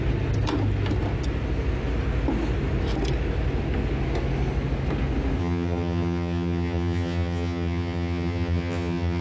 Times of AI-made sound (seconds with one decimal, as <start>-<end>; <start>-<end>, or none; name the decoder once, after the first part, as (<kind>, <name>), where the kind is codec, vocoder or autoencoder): 5.4-9.2 (vocoder, HiFi-GAN)